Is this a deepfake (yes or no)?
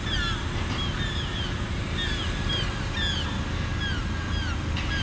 no